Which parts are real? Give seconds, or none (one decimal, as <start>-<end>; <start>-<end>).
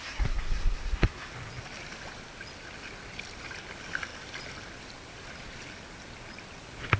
1.3-7.0